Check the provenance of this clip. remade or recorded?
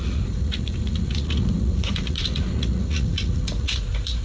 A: remade